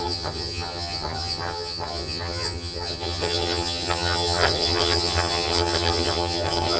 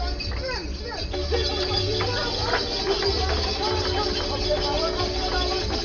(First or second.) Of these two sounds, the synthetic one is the first